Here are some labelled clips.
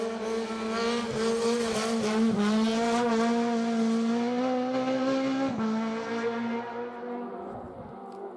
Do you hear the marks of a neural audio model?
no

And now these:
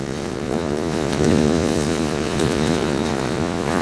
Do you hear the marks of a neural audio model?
yes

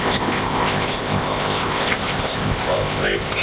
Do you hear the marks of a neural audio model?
yes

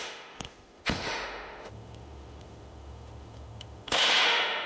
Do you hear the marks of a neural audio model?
yes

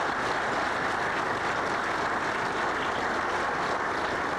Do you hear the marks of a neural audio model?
no